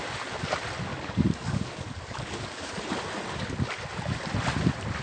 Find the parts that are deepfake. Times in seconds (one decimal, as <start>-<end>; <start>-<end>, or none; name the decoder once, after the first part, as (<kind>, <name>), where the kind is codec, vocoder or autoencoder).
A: 0.9-2.8 (codec, DAC)